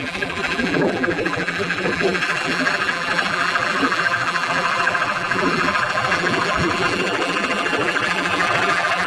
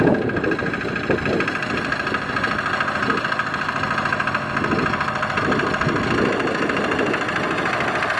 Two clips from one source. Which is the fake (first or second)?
first